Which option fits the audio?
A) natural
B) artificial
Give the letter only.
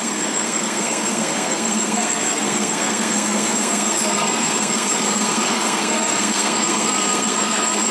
B